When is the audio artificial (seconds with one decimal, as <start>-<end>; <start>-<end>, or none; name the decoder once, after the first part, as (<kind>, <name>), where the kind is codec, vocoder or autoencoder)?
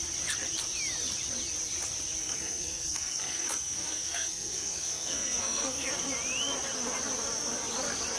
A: 2.2-5.9 (codec, SNAC)